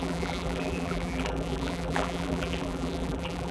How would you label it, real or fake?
fake